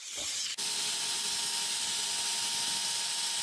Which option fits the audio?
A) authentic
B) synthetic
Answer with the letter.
A